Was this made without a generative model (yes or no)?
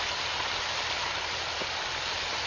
yes